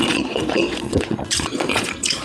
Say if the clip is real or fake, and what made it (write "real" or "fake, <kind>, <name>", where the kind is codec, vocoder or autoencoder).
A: fake, vocoder, Vocos